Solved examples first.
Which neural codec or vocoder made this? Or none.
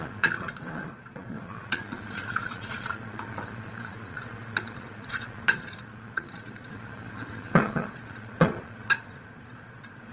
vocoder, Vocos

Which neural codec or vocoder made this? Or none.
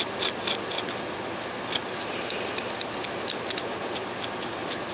none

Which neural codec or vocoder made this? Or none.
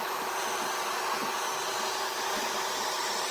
none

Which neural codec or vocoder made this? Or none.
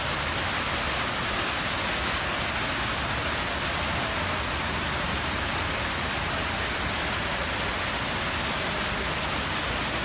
none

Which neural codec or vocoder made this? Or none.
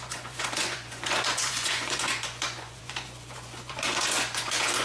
vocoder, Vocos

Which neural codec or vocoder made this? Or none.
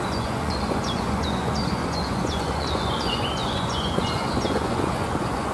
vocoder, Vocos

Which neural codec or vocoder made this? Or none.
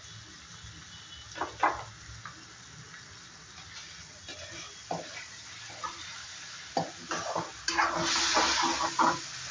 none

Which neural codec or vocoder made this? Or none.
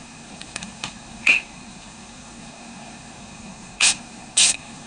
codec, SNAC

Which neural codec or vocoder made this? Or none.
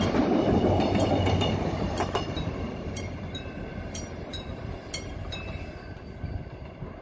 vocoder, BigVGAN v2